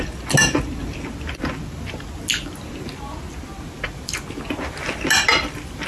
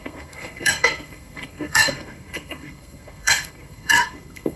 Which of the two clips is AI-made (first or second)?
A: second